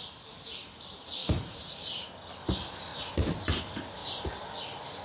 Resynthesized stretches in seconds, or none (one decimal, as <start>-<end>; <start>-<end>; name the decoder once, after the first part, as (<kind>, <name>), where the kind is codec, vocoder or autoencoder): 1.2-2.1 (vocoder, BigVGAN v2); 2.9-3.6